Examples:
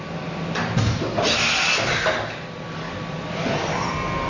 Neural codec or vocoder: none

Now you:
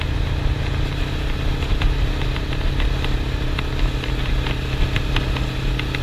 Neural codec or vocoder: none